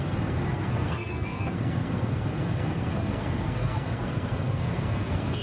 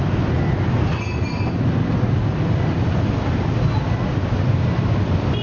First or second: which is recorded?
second